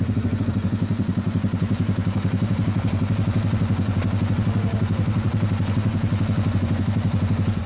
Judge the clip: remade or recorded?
remade